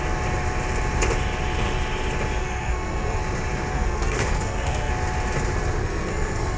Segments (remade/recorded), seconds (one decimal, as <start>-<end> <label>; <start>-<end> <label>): 0.0-2.4 recorded; 2.4-3.2 remade; 3.2-3.7 recorded; 3.7-4.9 remade; 4.9-5.8 recorded; 5.8-6.6 remade